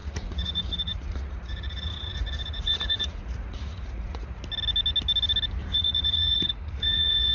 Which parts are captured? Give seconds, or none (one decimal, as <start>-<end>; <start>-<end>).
4.4-5.6